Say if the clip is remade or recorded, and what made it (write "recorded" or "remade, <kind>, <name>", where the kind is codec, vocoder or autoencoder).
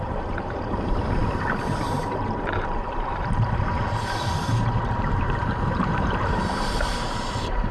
remade, vocoder, BigVGAN v2